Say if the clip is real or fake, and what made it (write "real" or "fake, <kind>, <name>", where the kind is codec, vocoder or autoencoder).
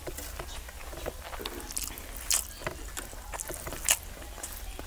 real